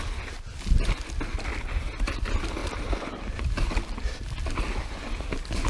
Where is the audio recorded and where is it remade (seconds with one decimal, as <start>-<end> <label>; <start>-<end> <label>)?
0.0-2.6 recorded; 2.6-4.2 remade; 4.2-5.7 recorded